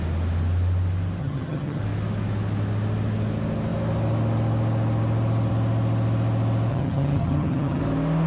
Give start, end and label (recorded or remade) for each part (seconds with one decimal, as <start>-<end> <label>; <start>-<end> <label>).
0.0-1.2 recorded; 1.2-1.8 remade; 1.8-6.7 recorded; 6.7-7.8 remade; 7.8-8.3 recorded